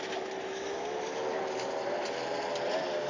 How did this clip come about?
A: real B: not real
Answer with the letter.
A